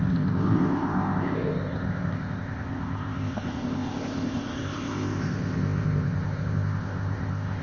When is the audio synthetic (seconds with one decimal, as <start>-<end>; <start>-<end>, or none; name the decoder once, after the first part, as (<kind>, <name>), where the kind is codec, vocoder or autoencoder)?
0.0-7.6 (codec, ZipCodec)